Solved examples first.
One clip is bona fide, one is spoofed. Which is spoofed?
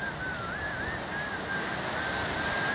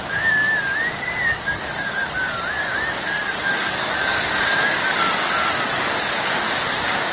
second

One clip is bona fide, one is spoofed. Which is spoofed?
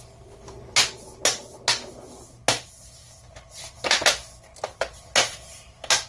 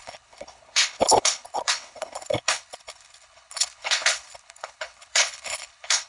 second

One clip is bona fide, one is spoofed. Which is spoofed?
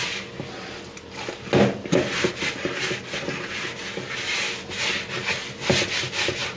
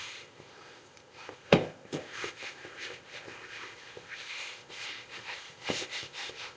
second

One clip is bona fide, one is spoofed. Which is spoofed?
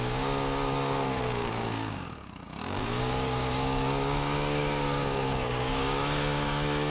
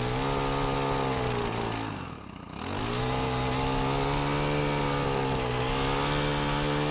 first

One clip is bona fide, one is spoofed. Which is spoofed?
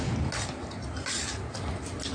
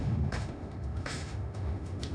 second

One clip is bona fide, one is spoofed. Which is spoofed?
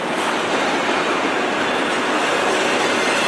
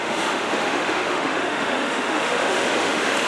second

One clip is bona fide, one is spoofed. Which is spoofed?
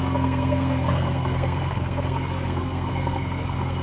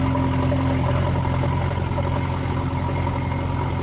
first